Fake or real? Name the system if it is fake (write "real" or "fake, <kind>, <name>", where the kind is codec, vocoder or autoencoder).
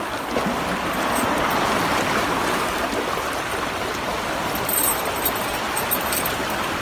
real